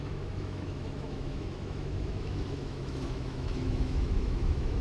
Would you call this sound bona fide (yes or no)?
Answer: no